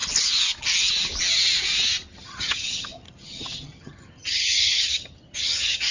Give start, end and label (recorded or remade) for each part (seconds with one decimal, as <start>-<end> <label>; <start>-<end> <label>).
0.0-2.1 recorded; 2.1-5.9 remade